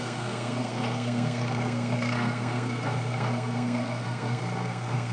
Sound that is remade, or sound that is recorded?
remade